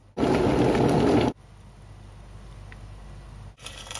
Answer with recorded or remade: recorded